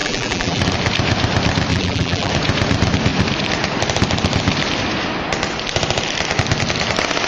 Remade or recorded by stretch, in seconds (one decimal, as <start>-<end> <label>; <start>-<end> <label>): 0.0-0.6 remade; 0.6-1.7 recorded; 1.7-2.3 remade; 2.3-7.3 recorded